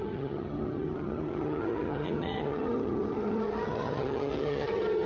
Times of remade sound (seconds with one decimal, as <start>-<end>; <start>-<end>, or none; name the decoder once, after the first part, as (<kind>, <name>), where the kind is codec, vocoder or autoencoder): 0.0-5.1 (vocoder, HiFi-GAN)